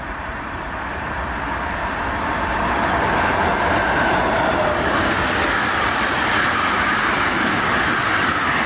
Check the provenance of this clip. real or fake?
real